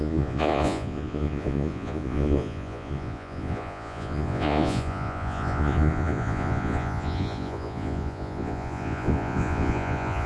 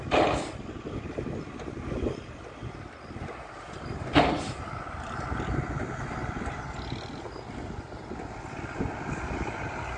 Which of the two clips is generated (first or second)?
first